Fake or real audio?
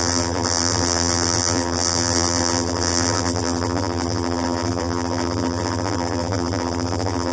fake